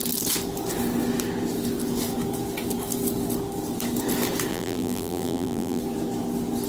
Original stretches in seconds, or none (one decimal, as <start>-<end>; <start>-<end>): 0.0-4.5; 5.8-6.7